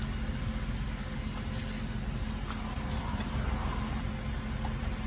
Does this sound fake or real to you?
real